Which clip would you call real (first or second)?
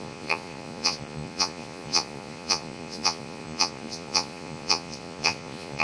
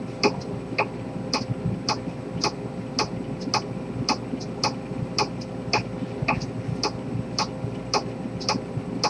second